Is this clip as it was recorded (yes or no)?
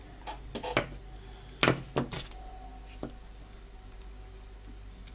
yes